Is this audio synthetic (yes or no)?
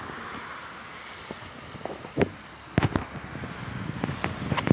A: no